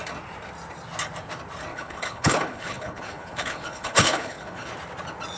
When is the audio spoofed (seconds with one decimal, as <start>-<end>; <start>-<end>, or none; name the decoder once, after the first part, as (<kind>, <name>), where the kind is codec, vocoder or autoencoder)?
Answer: 1.7-4.7 (codec, HILCodec)